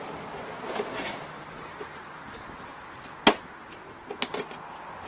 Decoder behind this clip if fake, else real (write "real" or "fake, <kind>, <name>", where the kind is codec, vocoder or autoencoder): real